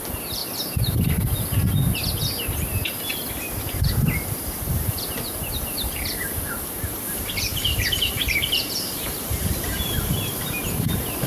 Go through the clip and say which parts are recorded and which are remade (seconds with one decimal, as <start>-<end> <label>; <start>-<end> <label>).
0.0-0.4 remade; 0.4-5.5 recorded; 5.5-11.3 remade